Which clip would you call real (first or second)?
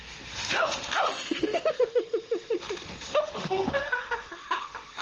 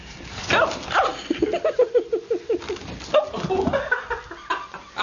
second